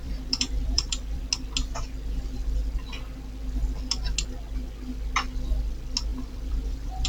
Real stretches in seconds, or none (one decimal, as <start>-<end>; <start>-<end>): 1.2-6.1